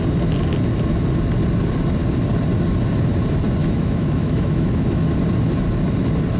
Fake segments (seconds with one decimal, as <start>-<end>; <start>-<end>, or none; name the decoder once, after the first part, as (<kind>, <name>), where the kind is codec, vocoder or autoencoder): 3.6-5.0 (autoencoder, DAC-VAE)